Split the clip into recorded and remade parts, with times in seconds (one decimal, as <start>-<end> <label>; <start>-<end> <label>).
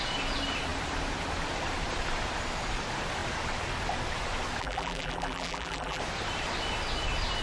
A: 0.0-4.6 recorded; 4.6-6.0 remade; 6.0-7.4 recorded